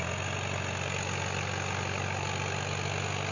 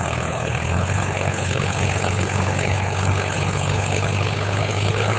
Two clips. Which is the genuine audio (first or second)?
first